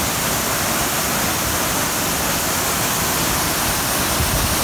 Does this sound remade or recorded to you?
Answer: recorded